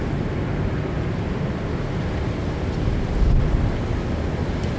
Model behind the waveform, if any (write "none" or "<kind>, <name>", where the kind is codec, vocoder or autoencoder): none